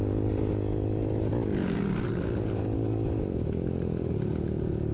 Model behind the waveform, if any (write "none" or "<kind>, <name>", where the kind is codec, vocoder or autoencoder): none